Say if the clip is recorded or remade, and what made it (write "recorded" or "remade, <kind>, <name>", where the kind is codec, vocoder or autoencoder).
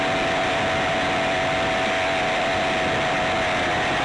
recorded